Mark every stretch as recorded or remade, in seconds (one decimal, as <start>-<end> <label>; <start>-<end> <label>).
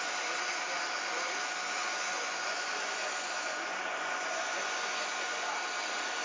0.0-1.8 recorded; 1.8-5.5 remade; 5.5-6.2 recorded